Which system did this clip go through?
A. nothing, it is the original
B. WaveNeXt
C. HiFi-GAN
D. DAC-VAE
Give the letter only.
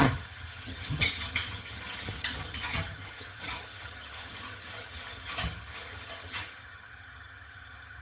C